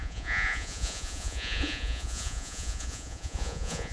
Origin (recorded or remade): remade